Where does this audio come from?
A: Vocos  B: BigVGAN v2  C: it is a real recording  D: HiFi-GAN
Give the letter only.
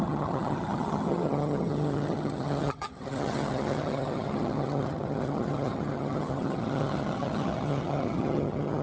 D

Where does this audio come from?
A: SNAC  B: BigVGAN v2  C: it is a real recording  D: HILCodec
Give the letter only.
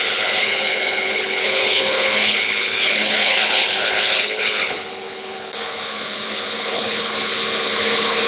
D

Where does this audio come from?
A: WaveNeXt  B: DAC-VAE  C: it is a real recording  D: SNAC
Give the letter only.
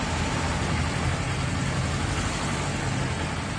C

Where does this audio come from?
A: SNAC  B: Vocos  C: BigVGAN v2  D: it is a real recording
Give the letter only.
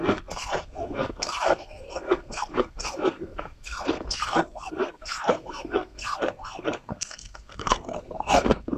A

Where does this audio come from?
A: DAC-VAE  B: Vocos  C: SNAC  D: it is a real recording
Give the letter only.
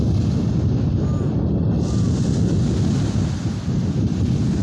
D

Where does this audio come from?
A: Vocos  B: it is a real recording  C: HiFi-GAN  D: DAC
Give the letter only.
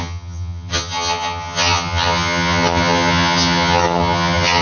C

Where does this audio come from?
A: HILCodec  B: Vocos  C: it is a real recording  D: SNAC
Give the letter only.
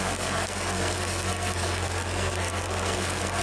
D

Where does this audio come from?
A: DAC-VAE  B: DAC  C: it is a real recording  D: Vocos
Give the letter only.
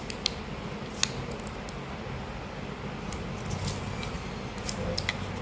C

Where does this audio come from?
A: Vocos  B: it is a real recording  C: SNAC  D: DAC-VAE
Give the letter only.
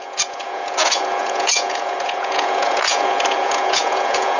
A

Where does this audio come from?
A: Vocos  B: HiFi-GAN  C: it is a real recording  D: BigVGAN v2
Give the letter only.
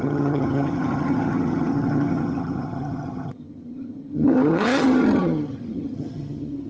B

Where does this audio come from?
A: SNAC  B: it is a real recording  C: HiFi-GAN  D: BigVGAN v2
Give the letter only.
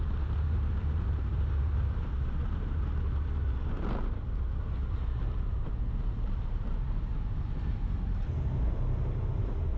D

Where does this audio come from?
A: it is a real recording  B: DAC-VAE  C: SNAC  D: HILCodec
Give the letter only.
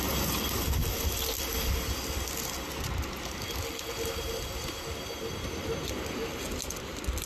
A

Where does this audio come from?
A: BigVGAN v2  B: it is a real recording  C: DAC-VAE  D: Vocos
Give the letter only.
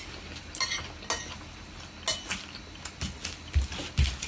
B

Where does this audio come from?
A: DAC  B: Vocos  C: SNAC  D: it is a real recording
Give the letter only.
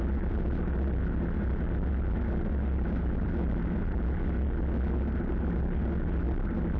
D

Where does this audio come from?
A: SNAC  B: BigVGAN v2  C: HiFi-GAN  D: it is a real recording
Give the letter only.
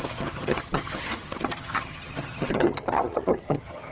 C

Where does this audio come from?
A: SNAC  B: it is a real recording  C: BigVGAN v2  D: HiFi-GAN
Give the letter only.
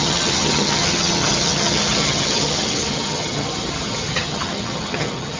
D